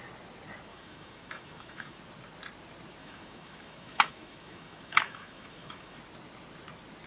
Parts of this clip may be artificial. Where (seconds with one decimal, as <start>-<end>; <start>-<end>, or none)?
0.7-2.0; 3.0-6.0